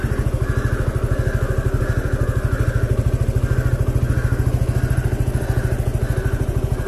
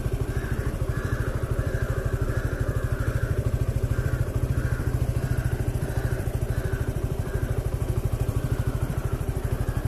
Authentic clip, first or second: first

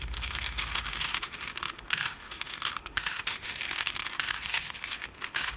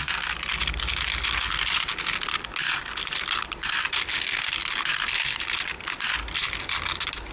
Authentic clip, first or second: second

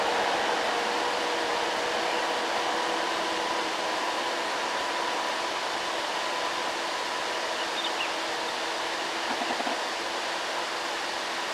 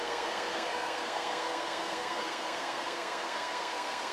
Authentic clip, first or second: first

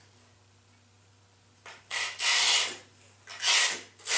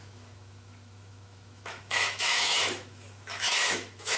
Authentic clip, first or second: first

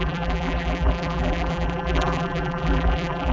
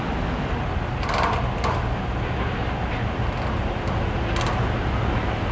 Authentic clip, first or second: second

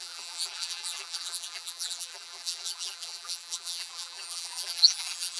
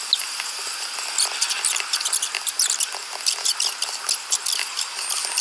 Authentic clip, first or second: second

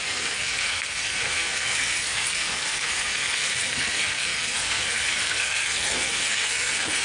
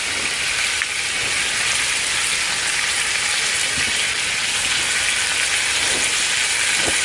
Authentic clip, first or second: second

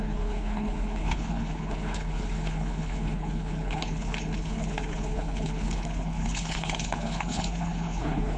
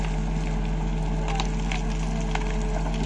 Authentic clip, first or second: second